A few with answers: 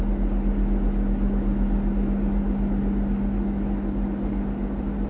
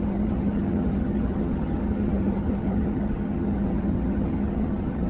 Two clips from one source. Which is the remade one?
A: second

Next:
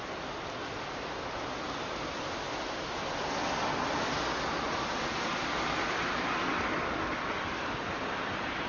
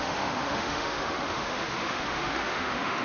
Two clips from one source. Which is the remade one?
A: second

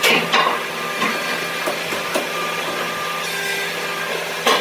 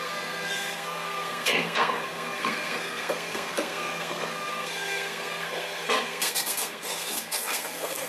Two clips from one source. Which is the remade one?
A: second